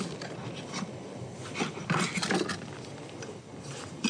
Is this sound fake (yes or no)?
no